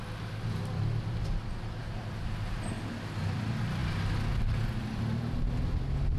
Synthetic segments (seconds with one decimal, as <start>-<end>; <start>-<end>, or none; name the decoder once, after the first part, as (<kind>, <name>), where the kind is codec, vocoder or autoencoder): none